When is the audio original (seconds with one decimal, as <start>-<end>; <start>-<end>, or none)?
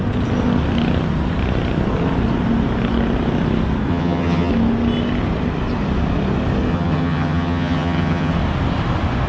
0.0-3.9; 4.5-6.7; 8.3-9.3